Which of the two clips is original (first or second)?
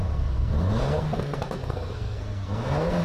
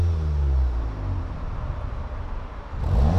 second